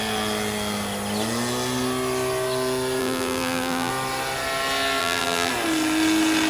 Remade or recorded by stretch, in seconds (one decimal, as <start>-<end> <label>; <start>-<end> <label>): 0.0-3.0 recorded; 3.0-3.9 remade; 3.9-5.0 recorded; 5.0-5.5 remade; 5.5-6.5 recorded